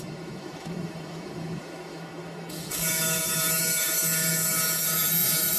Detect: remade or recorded remade